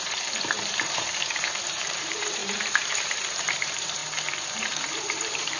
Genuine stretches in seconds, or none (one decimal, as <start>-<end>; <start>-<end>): 4.0-4.5